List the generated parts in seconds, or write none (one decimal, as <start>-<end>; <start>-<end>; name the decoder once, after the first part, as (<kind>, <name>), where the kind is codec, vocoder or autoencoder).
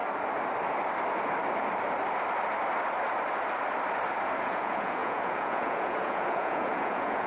4.4-7.3 (vocoder, Vocos)